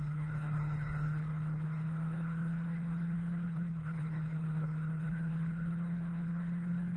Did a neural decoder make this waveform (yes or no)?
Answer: yes